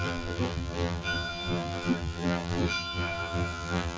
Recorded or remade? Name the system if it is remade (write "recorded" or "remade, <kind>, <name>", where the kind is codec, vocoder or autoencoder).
remade, vocoder, BigVGAN v2